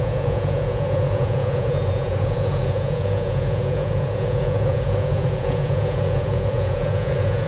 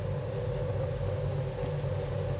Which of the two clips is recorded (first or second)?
second